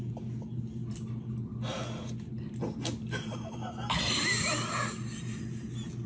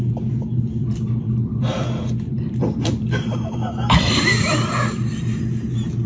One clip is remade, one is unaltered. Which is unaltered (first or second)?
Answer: first